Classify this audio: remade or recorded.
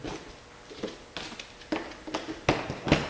recorded